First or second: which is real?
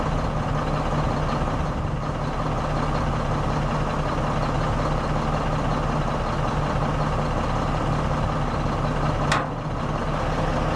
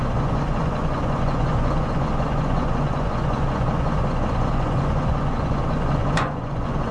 first